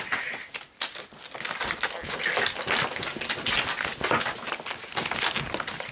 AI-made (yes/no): no